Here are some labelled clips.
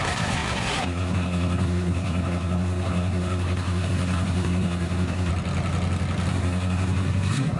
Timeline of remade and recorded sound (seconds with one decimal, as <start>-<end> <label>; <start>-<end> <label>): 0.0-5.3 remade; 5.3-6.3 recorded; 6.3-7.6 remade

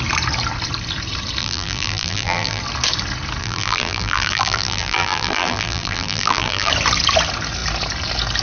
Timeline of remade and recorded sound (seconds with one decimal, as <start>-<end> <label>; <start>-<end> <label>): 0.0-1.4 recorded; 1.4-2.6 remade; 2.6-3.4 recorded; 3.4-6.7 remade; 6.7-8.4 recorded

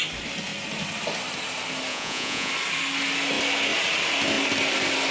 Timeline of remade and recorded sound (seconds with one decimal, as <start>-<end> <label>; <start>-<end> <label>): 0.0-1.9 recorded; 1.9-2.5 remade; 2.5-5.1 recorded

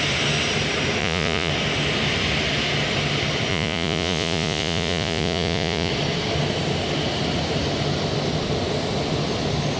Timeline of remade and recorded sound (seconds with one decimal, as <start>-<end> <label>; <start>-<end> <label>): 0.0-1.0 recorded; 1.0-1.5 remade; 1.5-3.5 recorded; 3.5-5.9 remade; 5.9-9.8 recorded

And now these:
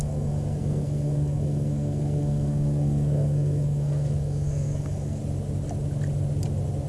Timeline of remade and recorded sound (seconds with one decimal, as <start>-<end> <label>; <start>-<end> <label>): 0.0-5.2 remade; 5.2-6.9 recorded